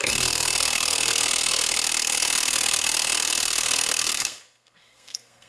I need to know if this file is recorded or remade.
remade